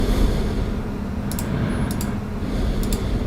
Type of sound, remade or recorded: recorded